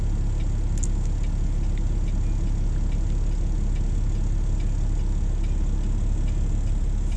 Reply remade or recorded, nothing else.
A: recorded